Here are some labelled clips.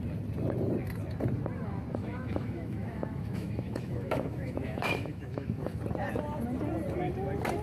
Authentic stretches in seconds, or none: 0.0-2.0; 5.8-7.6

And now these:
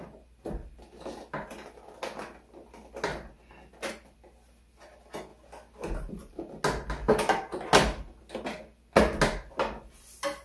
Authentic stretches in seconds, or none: 0.0-10.4

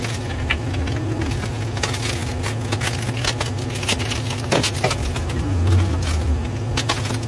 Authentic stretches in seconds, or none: 0.0-7.3

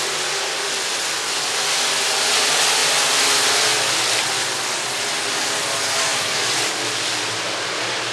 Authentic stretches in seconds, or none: 0.0-8.1

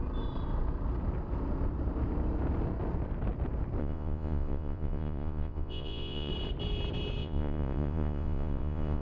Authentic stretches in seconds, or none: 0.0-3.8; 6.3-7.2

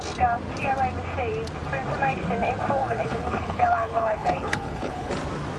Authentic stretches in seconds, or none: 0.0-2.8; 5.1-5.6

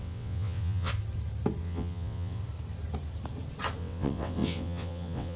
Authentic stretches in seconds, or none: 0.9-1.6; 2.4-3.8

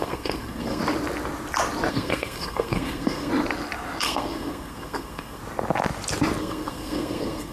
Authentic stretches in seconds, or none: 0.8-1.9; 3.3-4.0; 5.4-6.4